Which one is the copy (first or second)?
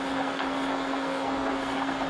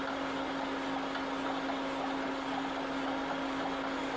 first